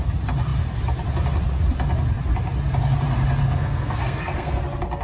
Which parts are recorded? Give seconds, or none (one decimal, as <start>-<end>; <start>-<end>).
0.0-3.4; 4.6-5.0